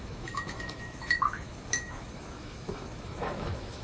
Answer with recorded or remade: remade